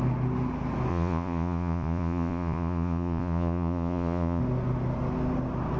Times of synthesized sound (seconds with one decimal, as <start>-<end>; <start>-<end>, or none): 0.9-4.4